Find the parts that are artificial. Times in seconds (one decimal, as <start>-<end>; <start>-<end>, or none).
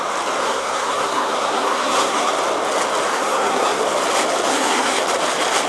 0.4-2.3; 3.1-3.8; 4.5-5.0